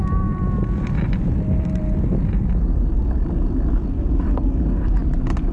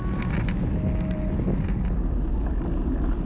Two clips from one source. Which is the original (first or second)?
second